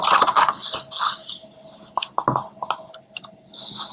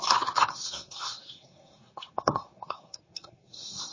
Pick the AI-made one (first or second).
second